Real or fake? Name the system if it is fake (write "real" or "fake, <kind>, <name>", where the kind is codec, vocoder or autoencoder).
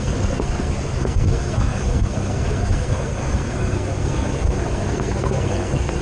fake, codec, SNAC